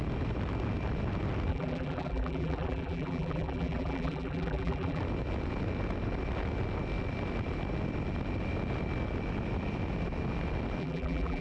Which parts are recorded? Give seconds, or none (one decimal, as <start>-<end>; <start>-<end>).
0.0-1.5; 5.0-10.8